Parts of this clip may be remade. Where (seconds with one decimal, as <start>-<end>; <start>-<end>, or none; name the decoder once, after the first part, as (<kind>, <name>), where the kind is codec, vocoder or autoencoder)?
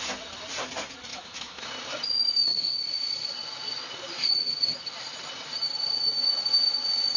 1.1-1.7 (autoencoder, DAC-VAE)